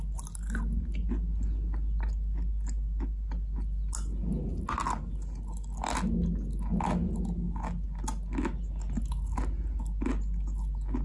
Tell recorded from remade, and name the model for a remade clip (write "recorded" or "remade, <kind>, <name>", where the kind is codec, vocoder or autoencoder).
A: recorded